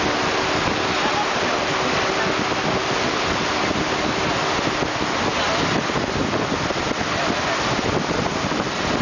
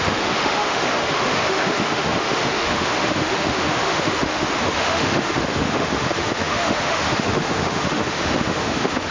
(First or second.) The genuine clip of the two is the first